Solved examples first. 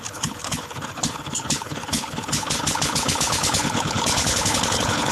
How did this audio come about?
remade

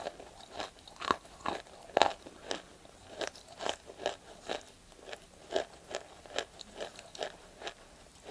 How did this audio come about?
recorded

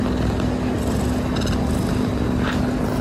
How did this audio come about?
recorded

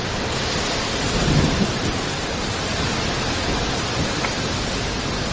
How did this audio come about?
recorded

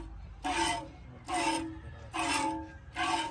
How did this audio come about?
recorded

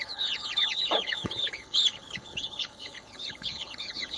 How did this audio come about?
remade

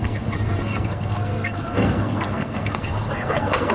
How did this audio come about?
remade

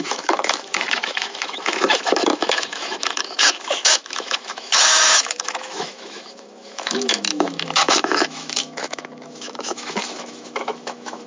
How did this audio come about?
remade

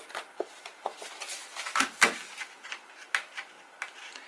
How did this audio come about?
recorded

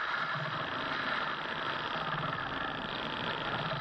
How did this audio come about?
recorded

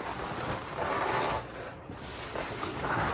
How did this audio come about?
recorded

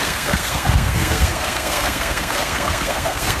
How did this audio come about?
remade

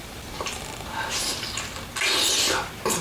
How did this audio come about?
recorded